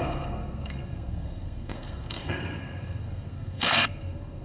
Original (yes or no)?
no